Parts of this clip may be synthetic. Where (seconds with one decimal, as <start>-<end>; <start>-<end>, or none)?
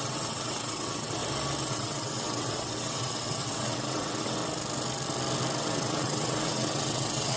0.0-1.2; 1.7-4.4; 5.6-7.4